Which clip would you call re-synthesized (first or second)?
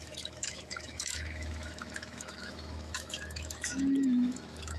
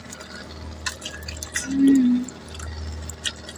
first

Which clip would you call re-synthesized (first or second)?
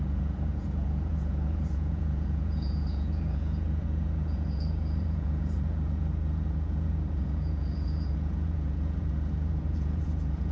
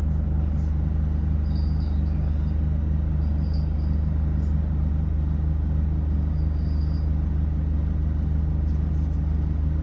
first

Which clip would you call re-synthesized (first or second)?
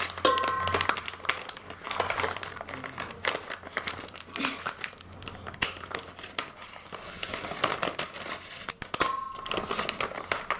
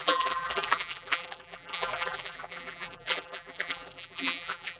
second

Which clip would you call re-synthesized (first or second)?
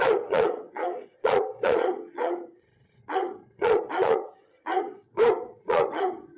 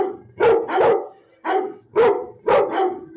first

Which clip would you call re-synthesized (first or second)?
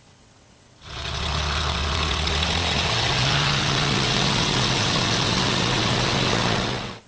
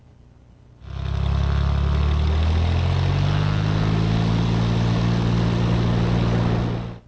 first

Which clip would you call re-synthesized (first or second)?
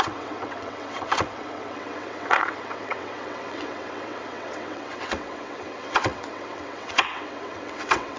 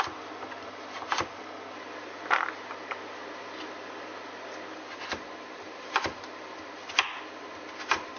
first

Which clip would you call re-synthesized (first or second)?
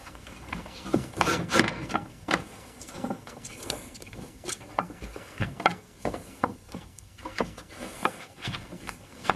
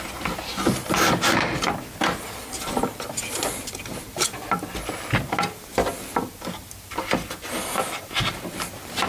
first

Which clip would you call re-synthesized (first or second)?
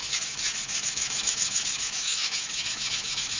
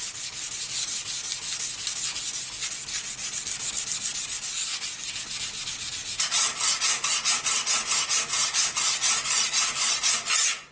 first